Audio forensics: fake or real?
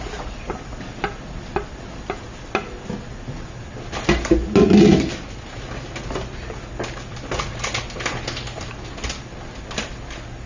real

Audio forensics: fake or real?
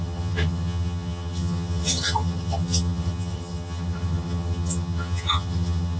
fake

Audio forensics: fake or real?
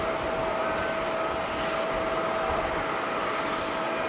real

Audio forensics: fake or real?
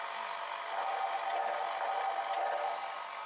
real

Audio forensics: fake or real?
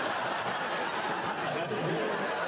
real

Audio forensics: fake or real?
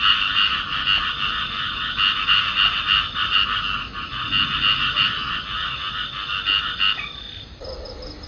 real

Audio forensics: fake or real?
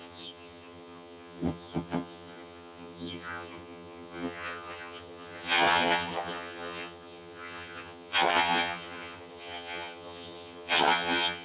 fake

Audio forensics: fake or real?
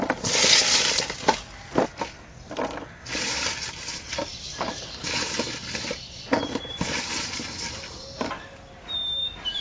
real